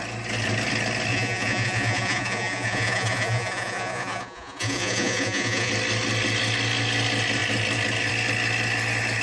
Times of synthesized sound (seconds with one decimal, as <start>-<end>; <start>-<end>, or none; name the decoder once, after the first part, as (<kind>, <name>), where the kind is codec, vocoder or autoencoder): 1.1-5.7 (vocoder, Vocos)

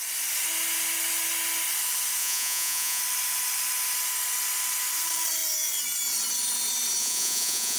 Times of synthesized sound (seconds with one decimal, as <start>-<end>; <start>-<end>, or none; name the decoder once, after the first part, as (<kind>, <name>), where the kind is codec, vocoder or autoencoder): 2.2-3.0 (vocoder, Vocos); 7.0-7.8

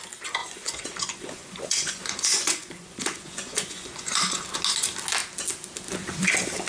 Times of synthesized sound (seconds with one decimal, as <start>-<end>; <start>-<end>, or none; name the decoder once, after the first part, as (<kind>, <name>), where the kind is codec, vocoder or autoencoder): 0.4-4.4 (vocoder, Vocos)

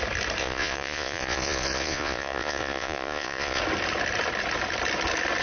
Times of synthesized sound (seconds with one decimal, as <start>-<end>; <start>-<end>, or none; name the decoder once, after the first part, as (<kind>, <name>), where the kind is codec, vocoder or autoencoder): 0.4-3.6 (vocoder, Vocos)